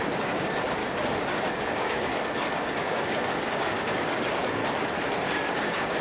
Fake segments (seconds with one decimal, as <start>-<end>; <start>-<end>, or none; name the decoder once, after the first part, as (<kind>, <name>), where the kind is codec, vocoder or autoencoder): 0.0-0.8 (codec, DAC); 1.5-2.1; 2.7-4.6; 5.5-6.0